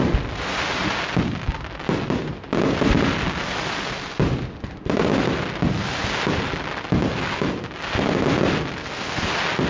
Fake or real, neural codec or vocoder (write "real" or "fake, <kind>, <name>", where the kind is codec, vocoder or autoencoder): real